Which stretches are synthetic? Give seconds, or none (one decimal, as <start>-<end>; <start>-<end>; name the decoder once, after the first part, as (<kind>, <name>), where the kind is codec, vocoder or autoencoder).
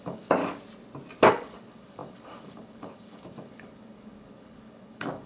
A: 0.0-0.4 (codec, DAC); 1.3-5.3